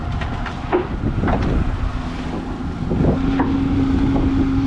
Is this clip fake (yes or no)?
no